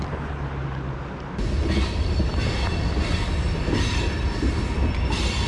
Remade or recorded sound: recorded